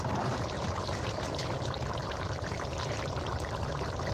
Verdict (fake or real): fake